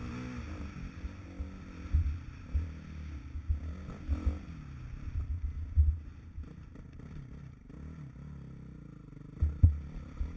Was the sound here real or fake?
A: real